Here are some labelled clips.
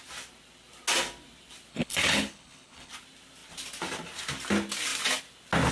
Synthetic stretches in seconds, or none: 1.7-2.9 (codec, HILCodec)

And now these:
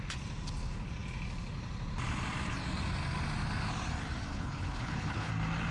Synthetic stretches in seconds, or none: 4.3-5.3 (codec, HILCodec)